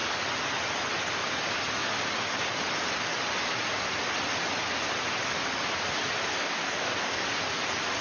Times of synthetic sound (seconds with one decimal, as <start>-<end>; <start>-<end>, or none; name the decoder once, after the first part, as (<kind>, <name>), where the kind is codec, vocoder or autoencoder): 6.4-7.2 (codec, DAC)